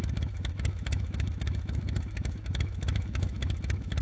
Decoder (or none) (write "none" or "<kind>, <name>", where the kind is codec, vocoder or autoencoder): autoencoder, DAC-VAE